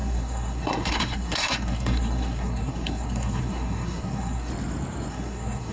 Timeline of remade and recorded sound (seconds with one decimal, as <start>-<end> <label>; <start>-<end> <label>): 0.0-4.5 remade; 4.5-5.1 recorded; 5.1-5.7 remade